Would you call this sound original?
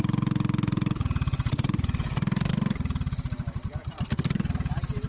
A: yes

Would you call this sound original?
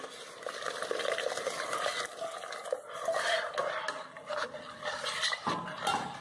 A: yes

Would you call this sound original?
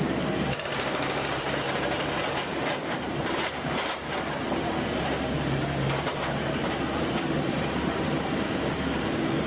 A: no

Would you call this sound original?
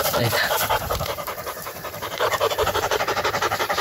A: no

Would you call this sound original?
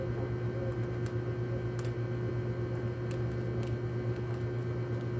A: yes